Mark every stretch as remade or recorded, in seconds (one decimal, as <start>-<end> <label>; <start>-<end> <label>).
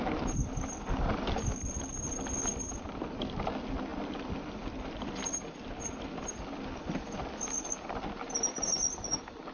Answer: 0.0-9.5 recorded